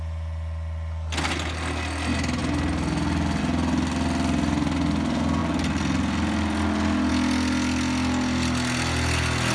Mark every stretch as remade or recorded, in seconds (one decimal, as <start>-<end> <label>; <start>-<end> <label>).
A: 0.0-9.5 recorded